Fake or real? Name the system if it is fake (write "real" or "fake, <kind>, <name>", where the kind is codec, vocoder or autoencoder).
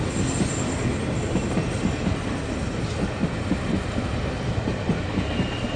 real